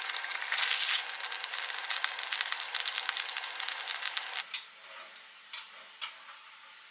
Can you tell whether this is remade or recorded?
recorded